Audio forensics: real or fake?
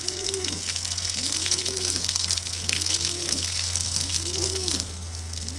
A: fake